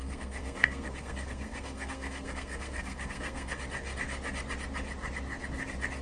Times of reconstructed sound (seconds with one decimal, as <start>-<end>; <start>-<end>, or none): 0.0-3.6